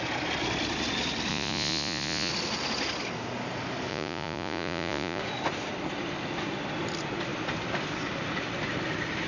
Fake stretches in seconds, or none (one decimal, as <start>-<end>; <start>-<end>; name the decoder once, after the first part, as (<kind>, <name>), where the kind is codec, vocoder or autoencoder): 1.3-2.3 (vocoder, Vocos); 3.9-5.2